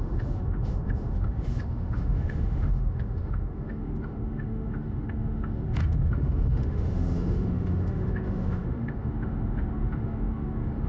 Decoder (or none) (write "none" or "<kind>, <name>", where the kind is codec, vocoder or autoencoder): autoencoder, DAC-VAE